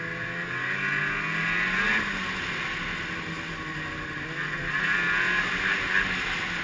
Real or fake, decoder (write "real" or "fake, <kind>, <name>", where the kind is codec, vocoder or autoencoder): real